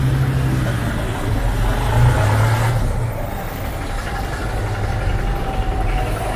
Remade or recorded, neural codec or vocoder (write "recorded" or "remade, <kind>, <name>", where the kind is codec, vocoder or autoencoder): recorded